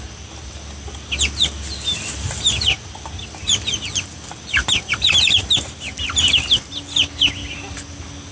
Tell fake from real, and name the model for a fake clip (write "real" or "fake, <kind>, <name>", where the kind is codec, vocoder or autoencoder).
real